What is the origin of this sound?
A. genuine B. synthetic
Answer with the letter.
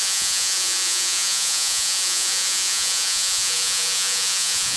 B